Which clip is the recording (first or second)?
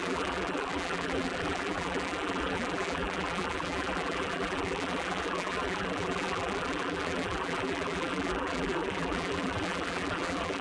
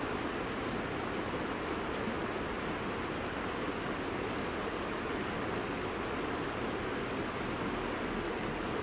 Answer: second